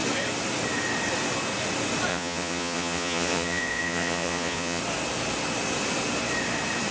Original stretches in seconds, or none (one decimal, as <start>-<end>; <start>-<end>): 0.0-2.1; 4.8-6.9